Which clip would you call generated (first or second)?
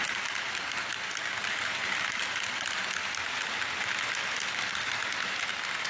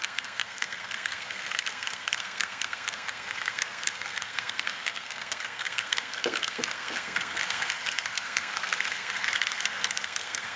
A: second